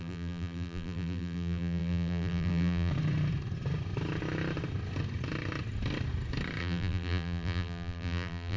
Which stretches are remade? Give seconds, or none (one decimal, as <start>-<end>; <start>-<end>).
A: 0.0-2.9; 6.6-8.6